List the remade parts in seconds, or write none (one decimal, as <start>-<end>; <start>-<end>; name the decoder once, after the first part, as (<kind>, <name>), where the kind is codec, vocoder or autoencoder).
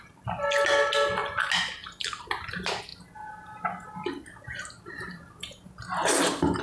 none